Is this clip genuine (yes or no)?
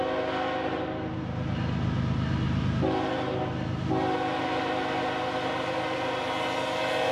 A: yes